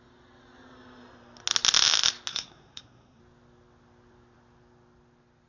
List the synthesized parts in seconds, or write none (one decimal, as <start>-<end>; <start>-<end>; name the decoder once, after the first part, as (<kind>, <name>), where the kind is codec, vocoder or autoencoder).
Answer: 2.3-3.2 (codec, SNAC)